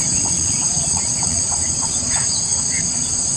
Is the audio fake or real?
fake